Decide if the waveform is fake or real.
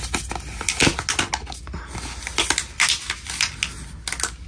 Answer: real